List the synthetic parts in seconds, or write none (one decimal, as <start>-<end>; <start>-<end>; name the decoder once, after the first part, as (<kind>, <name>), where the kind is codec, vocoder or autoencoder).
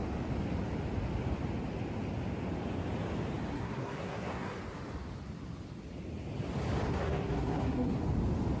3.5-4.6 (codec, SNAC); 6.9-8.0